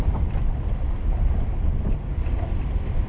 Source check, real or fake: real